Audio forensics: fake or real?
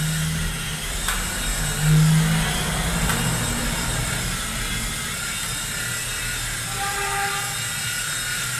real